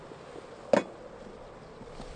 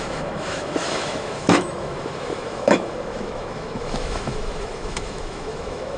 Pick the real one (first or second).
first